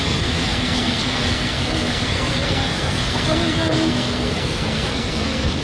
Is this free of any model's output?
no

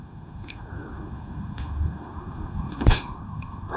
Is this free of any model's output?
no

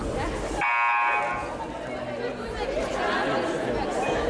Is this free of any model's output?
yes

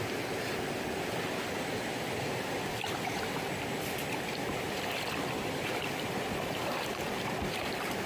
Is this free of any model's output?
yes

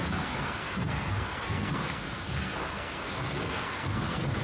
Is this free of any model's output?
no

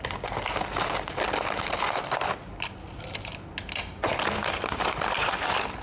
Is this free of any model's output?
yes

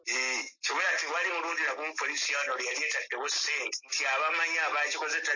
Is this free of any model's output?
yes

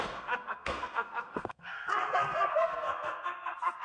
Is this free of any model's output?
no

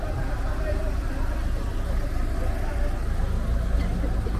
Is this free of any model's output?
yes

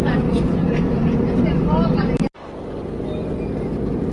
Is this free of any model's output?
yes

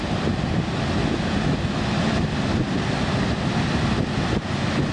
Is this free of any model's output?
yes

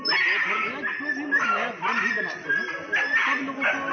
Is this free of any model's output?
yes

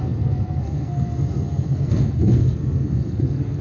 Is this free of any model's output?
no